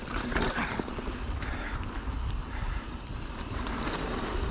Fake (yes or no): no